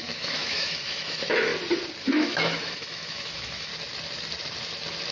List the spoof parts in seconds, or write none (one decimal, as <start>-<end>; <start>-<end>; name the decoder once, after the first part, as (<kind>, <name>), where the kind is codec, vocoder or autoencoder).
0.0-1.5 (autoencoder, DAC-VAE); 2.0-3.7